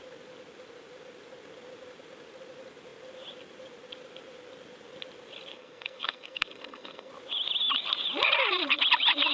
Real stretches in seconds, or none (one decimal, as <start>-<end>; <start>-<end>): 0.0-5.5; 7.1-9.3